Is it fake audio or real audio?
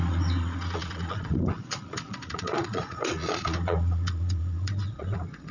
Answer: fake